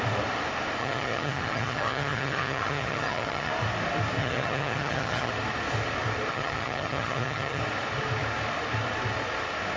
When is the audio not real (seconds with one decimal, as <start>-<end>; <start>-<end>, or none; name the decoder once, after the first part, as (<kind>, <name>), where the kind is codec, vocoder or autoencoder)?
0.8-3.5 (vocoder, HiFi-GAN); 4.2-5.3; 6.3-7.6

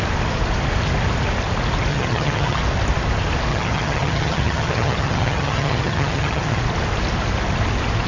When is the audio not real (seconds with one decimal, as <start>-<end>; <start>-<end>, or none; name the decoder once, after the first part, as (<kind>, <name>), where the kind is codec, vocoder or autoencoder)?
1.9-2.6 (vocoder, HiFi-GAN); 3.5-6.6

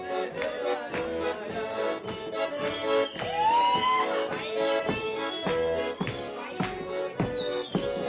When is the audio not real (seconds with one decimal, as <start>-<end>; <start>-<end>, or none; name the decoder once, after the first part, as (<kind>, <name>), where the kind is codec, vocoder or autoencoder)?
none

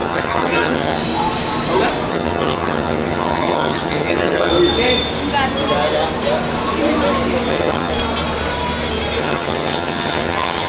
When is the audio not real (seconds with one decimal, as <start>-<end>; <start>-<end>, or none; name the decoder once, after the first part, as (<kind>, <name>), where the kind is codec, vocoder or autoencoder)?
0.0-1.0 (vocoder, HiFi-GAN); 2.1-4.5; 7.5-7.9; 9.2-10.7